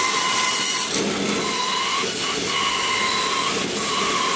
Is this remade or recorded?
recorded